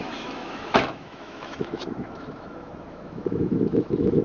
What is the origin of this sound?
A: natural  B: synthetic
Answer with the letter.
B